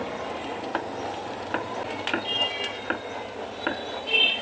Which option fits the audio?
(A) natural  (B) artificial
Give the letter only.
A